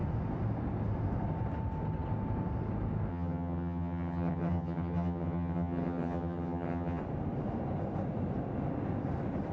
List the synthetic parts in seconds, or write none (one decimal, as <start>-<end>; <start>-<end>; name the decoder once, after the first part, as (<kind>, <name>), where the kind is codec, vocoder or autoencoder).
3.1-7.0 (vocoder, HiFi-GAN)